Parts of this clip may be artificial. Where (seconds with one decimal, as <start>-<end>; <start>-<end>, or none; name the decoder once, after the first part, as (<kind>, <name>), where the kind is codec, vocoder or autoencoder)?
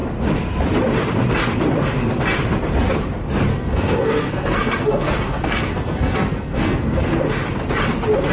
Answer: 3.5-7.2 (codec, SNAC)